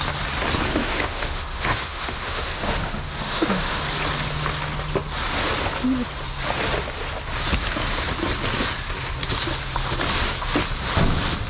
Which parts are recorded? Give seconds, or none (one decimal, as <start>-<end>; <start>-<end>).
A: 0.0-0.7; 3.8-11.5

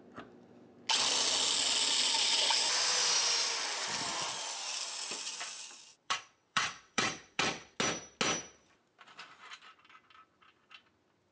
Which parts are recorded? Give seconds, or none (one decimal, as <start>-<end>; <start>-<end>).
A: 0.0-5.9; 7.8-11.3

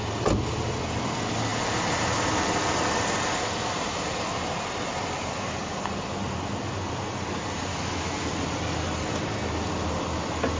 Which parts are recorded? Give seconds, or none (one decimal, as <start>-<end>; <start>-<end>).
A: 0.0-7.7; 8.3-10.6

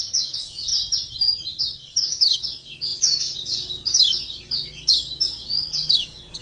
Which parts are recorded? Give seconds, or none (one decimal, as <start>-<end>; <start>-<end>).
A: 0.7-1.6

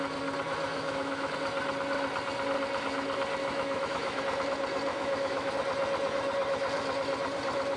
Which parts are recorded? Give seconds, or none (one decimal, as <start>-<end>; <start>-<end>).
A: 0.0-0.7; 1.3-3.4; 4.2-4.9; 5.5-7.8